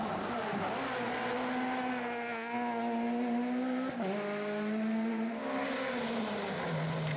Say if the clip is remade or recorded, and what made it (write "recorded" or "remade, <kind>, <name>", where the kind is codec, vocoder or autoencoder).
recorded